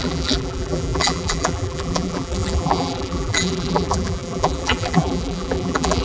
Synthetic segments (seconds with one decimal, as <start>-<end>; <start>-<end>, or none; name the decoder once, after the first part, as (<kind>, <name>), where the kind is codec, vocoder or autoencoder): 0.0-6.0 (vocoder, BigVGAN v2)